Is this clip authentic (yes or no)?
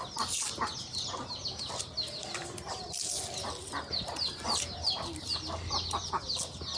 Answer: yes